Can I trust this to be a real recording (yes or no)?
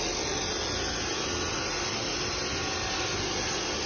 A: yes